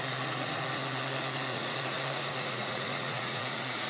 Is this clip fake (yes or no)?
yes